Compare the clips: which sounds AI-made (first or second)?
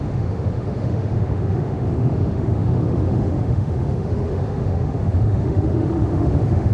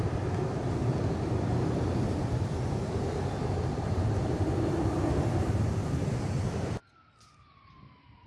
first